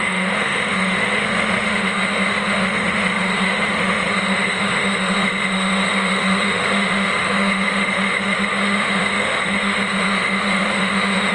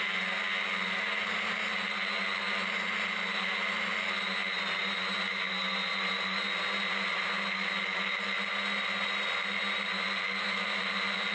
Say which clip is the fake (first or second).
first